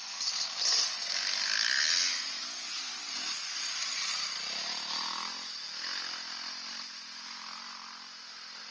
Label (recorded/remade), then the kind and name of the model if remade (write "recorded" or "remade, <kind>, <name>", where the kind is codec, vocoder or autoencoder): recorded